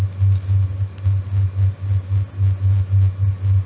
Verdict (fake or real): real